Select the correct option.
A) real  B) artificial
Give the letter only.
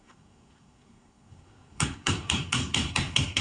B